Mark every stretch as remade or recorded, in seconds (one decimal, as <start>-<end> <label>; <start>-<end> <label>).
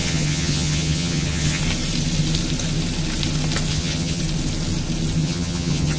0.0-1.6 remade; 1.6-3.7 recorded; 3.7-4.2 remade; 4.2-5.2 recorded; 5.2-6.0 remade